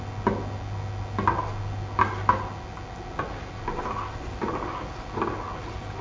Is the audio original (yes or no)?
yes